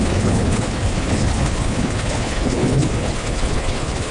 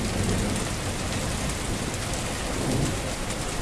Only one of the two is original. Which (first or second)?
second